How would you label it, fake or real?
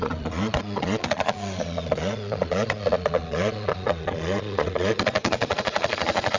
fake